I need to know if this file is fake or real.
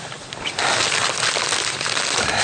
real